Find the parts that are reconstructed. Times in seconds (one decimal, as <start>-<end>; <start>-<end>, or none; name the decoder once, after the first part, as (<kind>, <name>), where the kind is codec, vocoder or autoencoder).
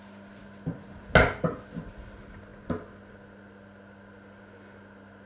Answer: none